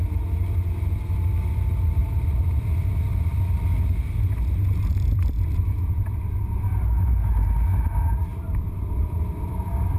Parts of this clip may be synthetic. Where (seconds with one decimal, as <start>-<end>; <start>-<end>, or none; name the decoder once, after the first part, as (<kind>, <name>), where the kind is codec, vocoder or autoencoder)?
2.0-2.6 (vocoder, BigVGAN v2); 4.9-5.6; 8.3-10.0